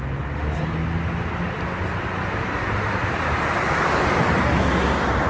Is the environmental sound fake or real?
real